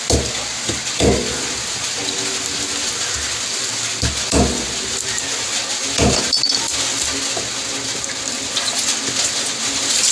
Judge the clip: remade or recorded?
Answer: recorded